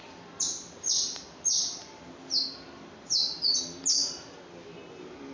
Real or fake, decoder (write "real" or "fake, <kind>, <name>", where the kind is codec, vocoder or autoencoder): real